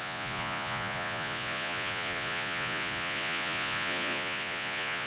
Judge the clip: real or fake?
fake